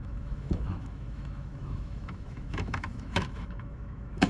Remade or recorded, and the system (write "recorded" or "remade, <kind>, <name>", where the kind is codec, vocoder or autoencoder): remade, autoencoder, DAC-VAE